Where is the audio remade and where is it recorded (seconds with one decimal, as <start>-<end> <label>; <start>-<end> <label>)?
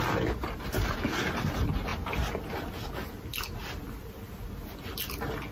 0.0-5.5 recorded